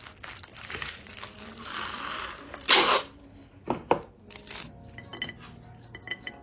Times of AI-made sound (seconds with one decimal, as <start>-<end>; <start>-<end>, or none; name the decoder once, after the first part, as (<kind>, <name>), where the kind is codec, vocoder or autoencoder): 0.5-1.1 (vocoder, Vocos)